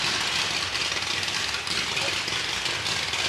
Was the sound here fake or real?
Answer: real